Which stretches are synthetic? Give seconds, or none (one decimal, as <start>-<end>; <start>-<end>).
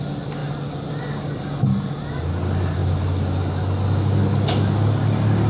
none